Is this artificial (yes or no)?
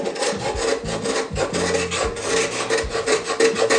no